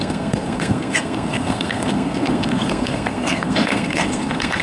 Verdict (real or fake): fake